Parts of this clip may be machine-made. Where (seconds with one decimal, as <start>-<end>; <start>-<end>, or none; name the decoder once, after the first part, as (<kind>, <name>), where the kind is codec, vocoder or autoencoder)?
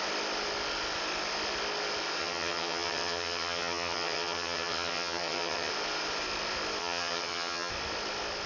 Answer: 2.2-5.7 (vocoder, HiFi-GAN); 6.8-7.7